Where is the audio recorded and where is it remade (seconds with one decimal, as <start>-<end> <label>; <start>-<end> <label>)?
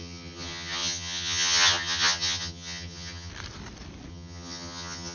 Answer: 0.0-3.3 remade; 3.3-4.1 recorded; 4.1-5.1 remade